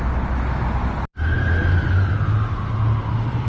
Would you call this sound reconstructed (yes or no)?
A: no